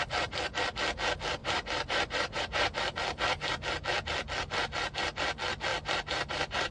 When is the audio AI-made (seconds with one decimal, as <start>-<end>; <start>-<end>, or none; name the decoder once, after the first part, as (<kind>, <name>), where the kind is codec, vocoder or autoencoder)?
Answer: 1.4-2.4 (vocoder, BigVGAN v2); 5.7-6.7